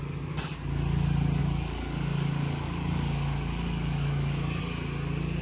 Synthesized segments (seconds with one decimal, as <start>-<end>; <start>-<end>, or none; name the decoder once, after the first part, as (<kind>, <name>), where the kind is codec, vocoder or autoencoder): 1.4-4.6 (codec, DAC)